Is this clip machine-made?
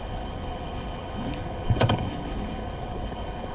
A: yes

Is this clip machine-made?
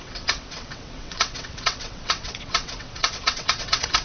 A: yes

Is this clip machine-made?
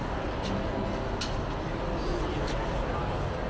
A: no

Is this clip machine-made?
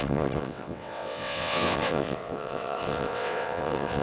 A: yes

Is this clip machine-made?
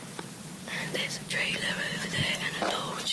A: yes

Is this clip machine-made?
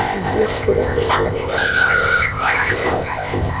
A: yes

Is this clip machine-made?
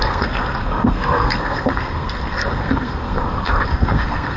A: yes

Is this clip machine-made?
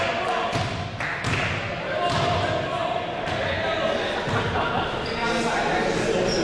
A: no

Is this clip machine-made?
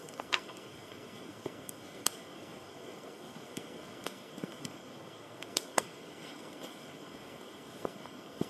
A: yes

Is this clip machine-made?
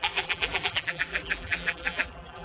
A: yes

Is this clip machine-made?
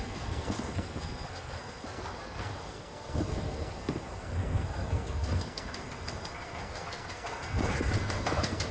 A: yes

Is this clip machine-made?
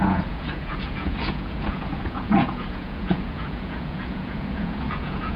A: yes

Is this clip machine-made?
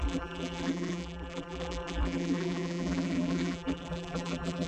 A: yes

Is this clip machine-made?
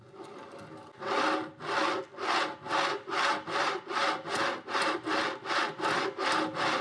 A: no